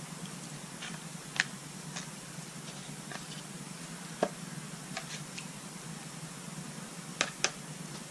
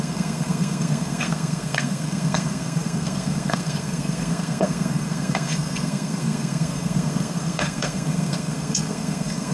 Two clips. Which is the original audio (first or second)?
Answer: first